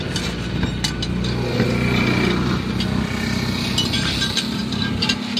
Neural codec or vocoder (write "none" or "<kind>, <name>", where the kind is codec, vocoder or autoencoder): none